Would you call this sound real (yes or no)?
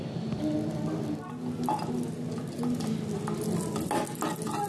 yes